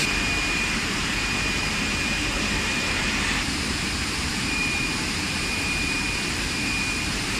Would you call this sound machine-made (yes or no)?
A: yes